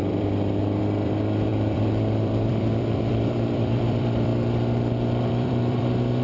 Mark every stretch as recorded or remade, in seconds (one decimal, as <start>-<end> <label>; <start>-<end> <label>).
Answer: 0.0-4.3 remade; 4.3-5.3 recorded; 5.3-6.2 remade